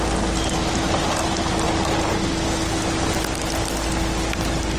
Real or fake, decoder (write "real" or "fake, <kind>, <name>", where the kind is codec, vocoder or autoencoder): real